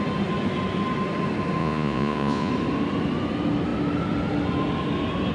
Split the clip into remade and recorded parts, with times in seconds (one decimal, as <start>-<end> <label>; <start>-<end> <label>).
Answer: 0.0-1.6 recorded; 1.6-2.5 remade; 2.5-5.3 recorded